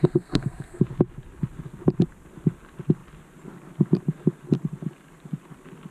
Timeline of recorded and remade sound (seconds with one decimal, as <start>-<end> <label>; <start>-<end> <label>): 0.0-0.8 remade; 0.8-5.9 recorded

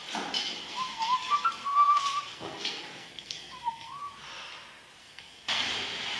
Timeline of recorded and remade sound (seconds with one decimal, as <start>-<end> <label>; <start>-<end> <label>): 0.0-0.4 recorded; 0.4-4.1 remade; 4.1-5.0 recorded; 5.0-5.7 remade; 5.7-6.2 recorded

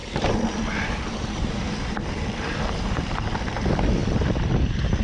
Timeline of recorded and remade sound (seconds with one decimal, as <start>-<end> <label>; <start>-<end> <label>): 0.0-5.0 remade

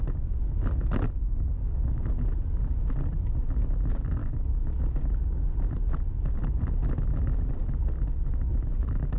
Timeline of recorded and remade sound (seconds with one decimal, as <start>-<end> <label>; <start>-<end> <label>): 0.0-1.2 recorded; 1.2-2.1 remade; 2.1-9.2 recorded